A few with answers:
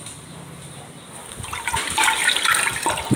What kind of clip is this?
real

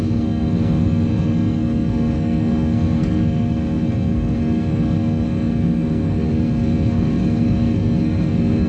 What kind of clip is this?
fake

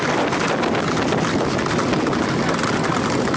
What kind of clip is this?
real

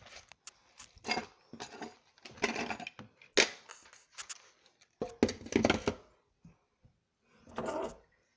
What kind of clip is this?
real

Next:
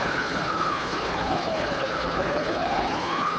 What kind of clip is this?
fake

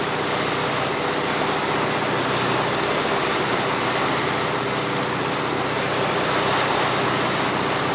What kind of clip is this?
real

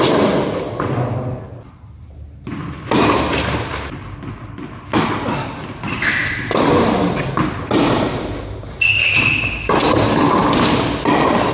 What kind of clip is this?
real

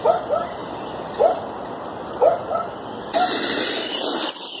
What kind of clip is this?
real